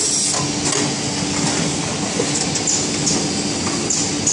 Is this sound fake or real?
real